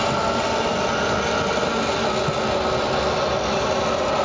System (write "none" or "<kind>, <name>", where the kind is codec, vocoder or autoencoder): none